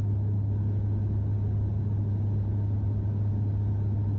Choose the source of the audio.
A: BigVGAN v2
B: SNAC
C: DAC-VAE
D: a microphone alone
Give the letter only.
D